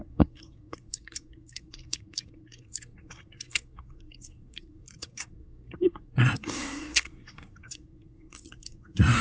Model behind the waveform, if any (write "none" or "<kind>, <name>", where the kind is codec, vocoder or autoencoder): codec, SNAC